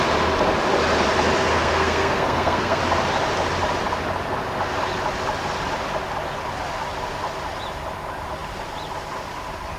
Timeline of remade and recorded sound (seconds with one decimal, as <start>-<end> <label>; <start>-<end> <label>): 0.0-1.5 recorded; 1.5-2.8 remade; 2.8-9.8 recorded